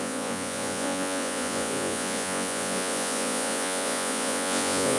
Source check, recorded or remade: remade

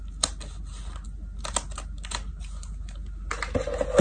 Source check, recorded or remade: recorded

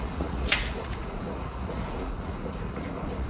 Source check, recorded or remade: remade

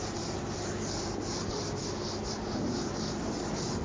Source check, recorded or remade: recorded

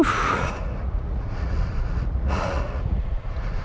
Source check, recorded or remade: remade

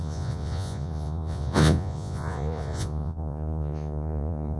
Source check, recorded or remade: remade